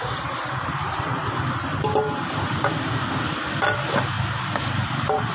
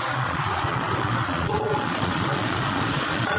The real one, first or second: first